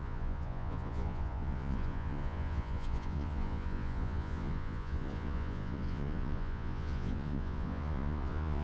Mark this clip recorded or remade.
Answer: remade